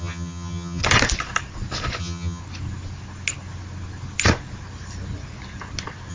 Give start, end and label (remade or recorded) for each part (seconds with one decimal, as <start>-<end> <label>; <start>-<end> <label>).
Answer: 0.0-0.8 remade; 0.8-2.0 recorded; 2.0-2.4 remade; 2.4-6.1 recorded